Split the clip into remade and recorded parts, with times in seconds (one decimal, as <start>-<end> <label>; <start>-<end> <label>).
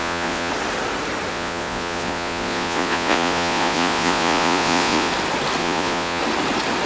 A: 0.0-0.5 remade; 0.5-1.3 recorded; 1.3-5.1 remade; 5.1-5.6 recorded; 5.6-6.2 remade; 6.2-6.9 recorded